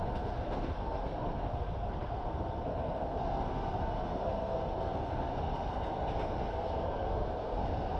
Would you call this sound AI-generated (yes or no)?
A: yes